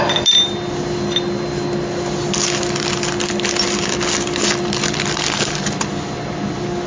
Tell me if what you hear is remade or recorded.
recorded